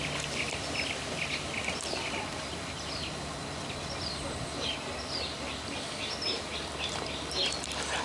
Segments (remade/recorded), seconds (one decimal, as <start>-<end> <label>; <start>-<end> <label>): 0.0-8.0 recorded